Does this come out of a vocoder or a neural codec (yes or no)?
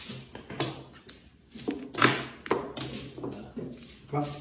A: no